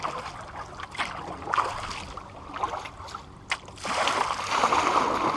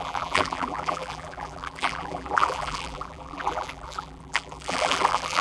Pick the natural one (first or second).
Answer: first